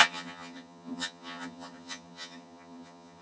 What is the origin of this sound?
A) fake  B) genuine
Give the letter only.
A